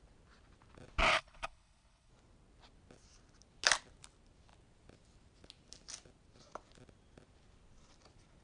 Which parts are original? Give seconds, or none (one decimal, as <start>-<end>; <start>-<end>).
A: 0.0-1.1; 2.1-8.4